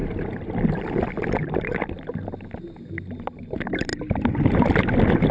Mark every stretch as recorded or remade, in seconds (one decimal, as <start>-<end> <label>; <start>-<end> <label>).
0.0-1.9 remade; 1.9-5.3 recorded

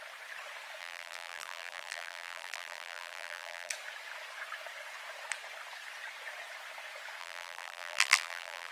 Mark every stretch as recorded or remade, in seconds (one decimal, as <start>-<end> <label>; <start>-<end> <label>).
0.0-0.8 recorded; 0.8-3.7 remade; 3.7-7.2 recorded; 7.2-8.7 remade

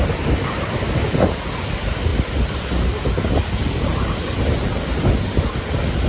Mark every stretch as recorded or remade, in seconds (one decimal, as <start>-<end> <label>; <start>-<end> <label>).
0.0-6.1 recorded